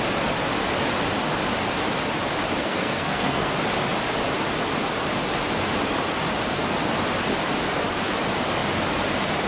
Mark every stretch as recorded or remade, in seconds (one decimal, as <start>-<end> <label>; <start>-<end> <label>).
0.0-2.6 recorded; 2.6-3.5 remade; 3.5-9.5 recorded